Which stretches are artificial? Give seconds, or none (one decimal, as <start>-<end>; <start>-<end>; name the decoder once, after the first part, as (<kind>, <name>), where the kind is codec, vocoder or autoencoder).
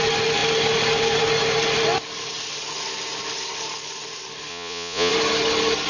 4.5-5.1 (vocoder, Vocos)